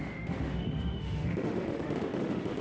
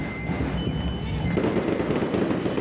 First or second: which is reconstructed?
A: first